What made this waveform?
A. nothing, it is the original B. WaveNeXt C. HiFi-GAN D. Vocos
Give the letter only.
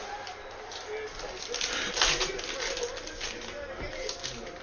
A